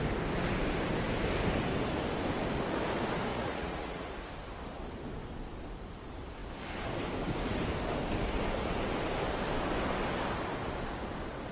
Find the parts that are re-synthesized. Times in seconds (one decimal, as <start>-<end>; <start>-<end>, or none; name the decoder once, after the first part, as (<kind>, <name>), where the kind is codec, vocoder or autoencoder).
3.3-4.1 (vocoder, Vocos)